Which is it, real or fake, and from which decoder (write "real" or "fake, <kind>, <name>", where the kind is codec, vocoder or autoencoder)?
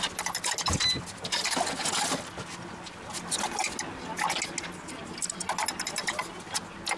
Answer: real